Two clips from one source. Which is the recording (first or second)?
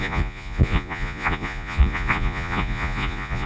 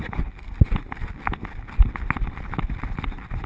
second